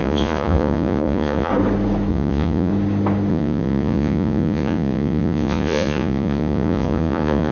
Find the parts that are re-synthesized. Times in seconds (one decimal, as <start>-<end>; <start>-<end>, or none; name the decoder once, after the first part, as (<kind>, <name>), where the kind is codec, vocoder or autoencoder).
0.0-1.5 (vocoder, Vocos); 2.1-2.7; 3.3-7.5